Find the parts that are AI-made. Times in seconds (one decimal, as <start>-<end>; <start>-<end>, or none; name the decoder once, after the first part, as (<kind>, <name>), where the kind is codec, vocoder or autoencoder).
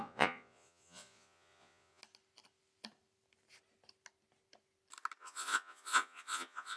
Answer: 0.0-2.0 (vocoder, Vocos); 5.2-6.8